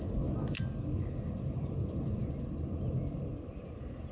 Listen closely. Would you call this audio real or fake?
real